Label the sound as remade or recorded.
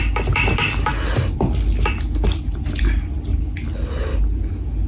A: recorded